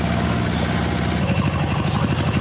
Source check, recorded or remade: recorded